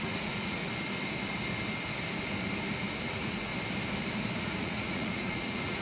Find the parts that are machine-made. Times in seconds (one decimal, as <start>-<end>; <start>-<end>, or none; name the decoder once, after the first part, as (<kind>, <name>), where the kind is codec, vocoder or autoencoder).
0.0-0.6 (vocoder, Vocos); 3.1-3.5; 4.4-5.8